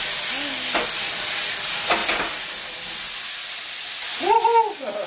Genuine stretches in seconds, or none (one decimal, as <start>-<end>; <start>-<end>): 0.0-5.1